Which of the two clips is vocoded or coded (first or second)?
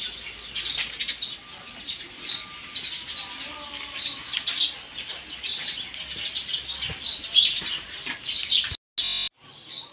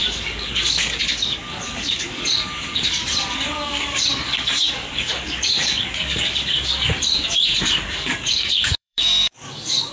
second